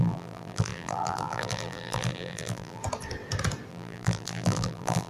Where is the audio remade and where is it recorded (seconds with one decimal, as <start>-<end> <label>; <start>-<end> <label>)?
0.0-2.8 remade; 2.8-3.7 recorded; 3.7-5.1 remade

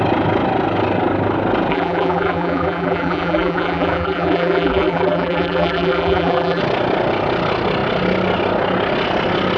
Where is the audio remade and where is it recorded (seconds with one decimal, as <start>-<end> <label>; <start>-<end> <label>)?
0.0-1.7 recorded; 1.7-6.6 remade; 6.6-9.6 recorded

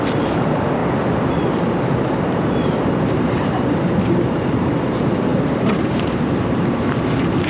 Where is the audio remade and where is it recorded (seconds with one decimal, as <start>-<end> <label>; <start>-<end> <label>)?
0.0-0.8 remade; 0.8-1.9 recorded; 1.9-7.5 remade

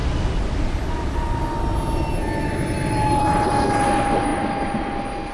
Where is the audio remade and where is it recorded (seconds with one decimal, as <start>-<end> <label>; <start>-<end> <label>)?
0.0-5.3 recorded

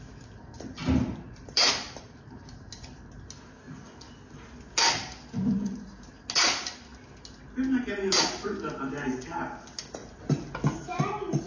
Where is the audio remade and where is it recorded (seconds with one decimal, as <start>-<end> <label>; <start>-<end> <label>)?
0.0-0.8 recorded; 0.8-2.0 remade; 2.0-11.5 recorded

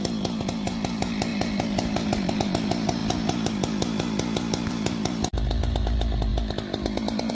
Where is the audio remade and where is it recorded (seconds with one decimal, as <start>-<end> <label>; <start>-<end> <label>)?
0.0-7.3 recorded